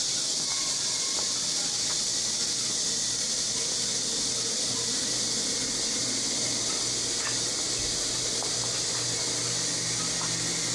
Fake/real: real